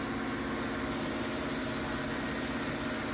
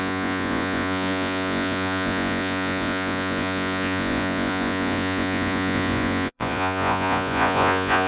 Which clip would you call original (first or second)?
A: first